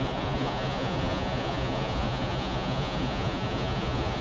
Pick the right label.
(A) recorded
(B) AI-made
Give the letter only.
B